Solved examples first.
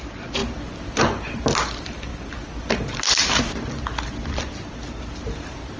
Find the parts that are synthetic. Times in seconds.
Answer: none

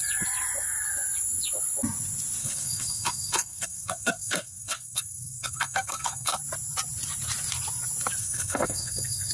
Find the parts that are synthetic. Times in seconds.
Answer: 2.4-6.4 (codec, SNAC); 8.2-9.3